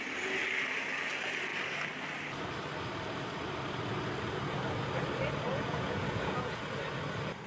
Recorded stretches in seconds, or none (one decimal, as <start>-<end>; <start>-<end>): 0.0-5.5; 6.6-7.5